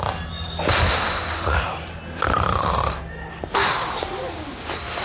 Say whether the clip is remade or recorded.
recorded